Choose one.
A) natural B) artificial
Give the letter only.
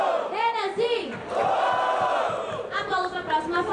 A